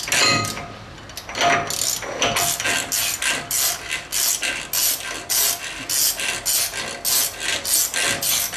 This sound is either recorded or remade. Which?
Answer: recorded